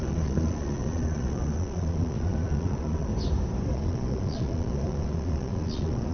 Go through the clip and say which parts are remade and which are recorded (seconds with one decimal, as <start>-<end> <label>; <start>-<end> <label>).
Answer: 0.0-3.1 remade; 3.1-3.7 recorded; 3.7-6.1 remade